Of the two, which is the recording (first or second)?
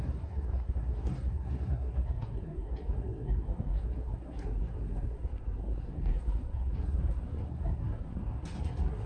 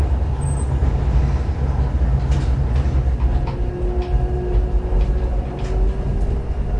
second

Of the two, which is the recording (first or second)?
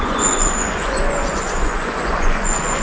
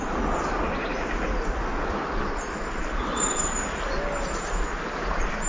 second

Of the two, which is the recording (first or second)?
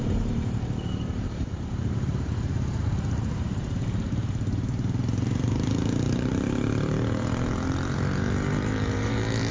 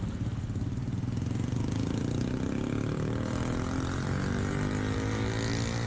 second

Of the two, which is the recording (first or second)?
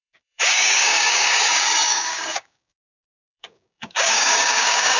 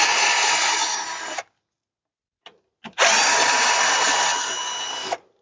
second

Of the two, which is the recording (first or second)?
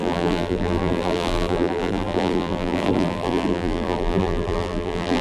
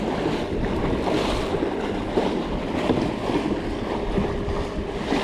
second